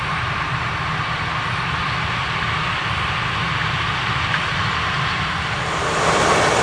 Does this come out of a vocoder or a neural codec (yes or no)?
no